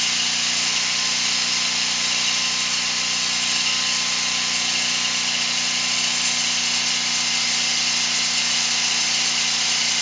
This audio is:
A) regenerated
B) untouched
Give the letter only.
B